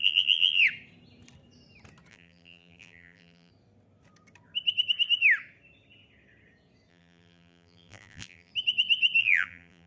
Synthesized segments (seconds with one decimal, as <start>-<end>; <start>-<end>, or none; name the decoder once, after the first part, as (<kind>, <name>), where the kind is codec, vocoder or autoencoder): 0.0-0.6 (vocoder, BigVGAN v2); 2.1-3.5; 6.9-8.5; 9.2-9.9